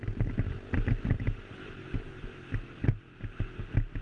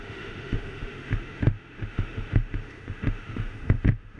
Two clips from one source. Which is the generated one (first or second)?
second